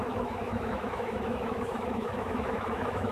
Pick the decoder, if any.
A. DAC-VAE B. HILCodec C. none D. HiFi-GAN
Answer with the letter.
A